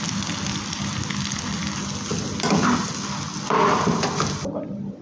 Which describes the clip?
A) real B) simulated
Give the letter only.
A